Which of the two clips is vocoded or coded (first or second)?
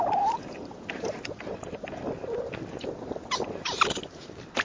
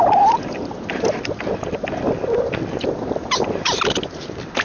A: first